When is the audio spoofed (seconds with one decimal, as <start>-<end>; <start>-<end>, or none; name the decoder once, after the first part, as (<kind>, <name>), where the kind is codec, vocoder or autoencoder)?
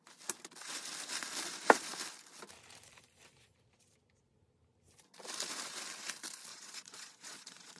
6.5-7.8 (vocoder, Vocos)